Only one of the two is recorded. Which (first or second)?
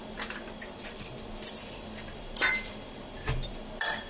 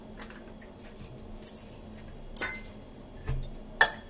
second